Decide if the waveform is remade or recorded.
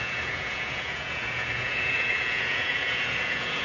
remade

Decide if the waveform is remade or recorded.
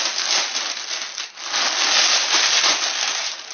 recorded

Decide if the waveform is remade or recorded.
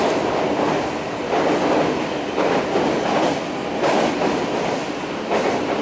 recorded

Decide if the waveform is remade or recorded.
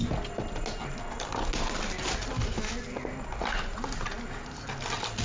recorded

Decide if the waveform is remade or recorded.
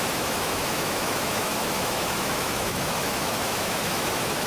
remade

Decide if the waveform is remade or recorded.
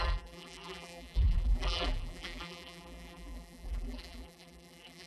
remade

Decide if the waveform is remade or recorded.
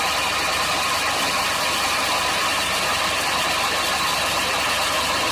recorded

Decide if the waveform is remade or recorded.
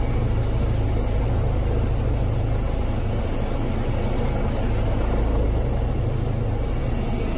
recorded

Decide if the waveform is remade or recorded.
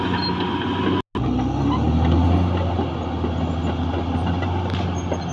recorded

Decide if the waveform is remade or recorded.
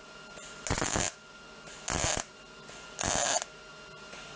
recorded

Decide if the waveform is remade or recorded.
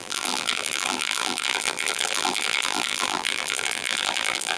remade